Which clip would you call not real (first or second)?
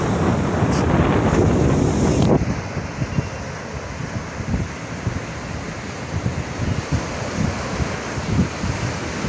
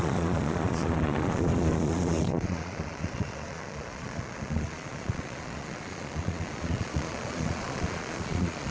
second